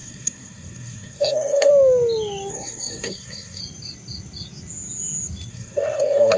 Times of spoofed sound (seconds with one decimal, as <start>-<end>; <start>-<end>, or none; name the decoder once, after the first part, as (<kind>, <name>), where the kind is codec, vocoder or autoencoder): 0.0-1.7 (codec, SNAC); 2.5-3.6; 5.5-6.4